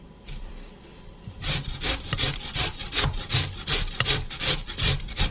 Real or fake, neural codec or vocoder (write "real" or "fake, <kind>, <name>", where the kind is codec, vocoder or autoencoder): fake, vocoder, BigVGAN v2